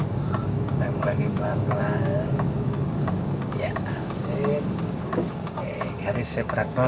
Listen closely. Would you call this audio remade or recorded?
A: remade